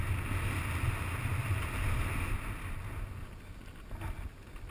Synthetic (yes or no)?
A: no